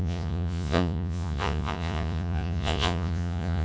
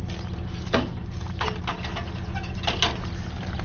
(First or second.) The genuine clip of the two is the second